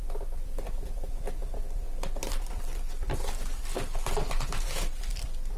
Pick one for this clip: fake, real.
fake